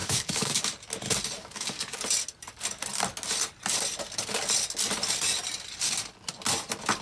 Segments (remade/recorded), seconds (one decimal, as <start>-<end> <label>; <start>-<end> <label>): 0.0-0.6 remade; 0.6-1.4 recorded; 1.4-2.0 remade; 2.0-7.0 recorded